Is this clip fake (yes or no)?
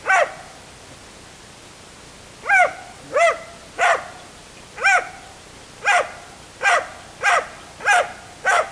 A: no